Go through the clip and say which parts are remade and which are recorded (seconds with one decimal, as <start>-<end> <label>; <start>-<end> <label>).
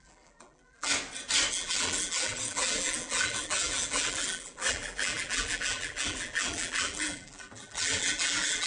0.0-0.9 remade; 0.9-1.5 recorded; 1.5-8.7 remade